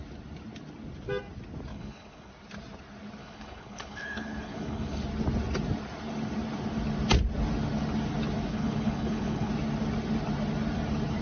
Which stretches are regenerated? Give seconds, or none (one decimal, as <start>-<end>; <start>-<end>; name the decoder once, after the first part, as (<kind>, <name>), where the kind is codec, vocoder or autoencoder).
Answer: 1.7-2.3 (codec, HILCodec); 3.2-5.0; 8.5-9.5